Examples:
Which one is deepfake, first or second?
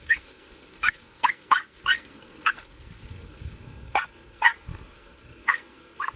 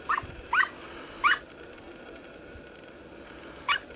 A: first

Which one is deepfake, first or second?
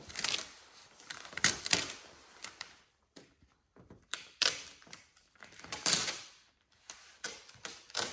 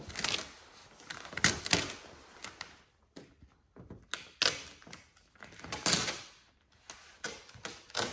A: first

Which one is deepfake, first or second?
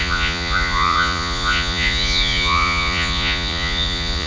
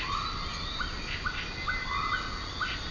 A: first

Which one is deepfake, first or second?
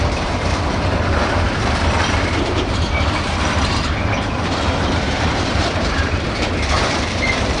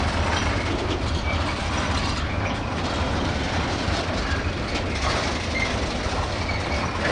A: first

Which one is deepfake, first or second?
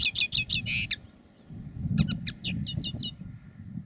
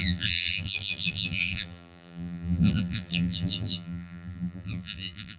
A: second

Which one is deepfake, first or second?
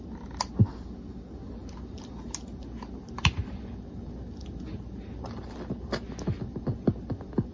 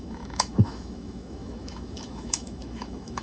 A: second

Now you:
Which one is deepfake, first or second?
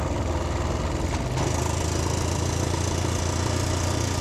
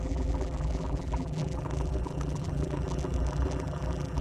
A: second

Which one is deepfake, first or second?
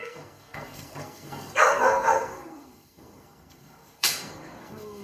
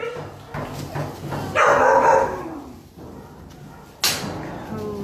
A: first